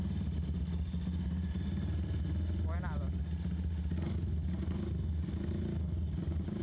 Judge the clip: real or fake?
real